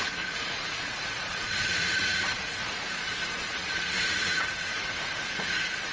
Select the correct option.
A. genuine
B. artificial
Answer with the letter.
B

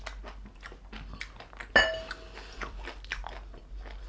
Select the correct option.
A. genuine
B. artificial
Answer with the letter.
A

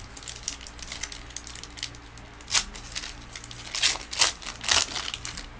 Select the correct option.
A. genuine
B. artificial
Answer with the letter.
A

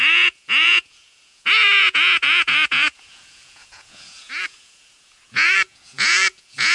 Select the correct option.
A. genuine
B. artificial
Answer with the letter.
B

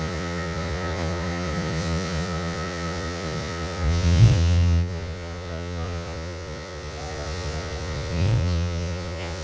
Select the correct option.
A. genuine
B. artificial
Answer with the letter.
B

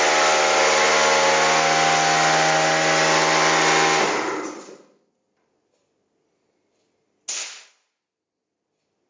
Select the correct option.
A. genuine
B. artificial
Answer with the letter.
A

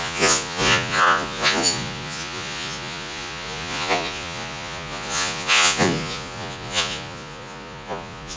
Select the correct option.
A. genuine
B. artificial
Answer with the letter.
B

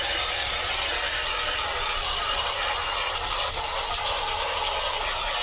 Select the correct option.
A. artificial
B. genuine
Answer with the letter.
B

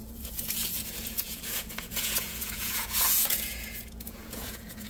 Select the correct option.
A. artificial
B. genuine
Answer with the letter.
A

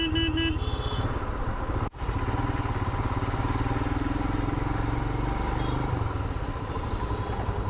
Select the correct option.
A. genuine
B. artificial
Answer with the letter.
A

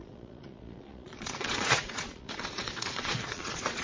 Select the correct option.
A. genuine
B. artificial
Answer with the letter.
B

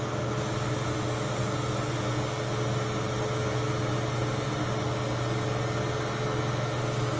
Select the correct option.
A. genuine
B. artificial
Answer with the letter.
A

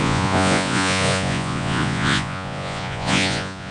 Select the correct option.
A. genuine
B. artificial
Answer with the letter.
B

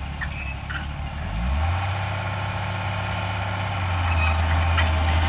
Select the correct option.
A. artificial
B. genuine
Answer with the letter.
B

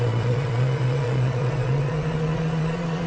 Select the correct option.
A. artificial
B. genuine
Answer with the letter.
A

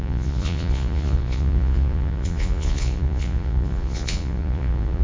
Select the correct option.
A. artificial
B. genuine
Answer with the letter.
A